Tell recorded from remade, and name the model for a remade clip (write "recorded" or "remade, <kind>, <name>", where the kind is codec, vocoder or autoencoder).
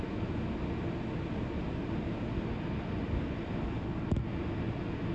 recorded